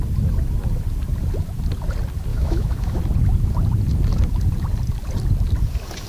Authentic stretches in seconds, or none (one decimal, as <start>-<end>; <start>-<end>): 0.0-2.3; 3.0-6.1